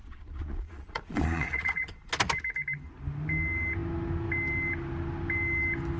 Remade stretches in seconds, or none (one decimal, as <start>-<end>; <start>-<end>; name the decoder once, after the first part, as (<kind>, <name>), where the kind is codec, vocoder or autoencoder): 0.0-2.1 (vocoder, Vocos)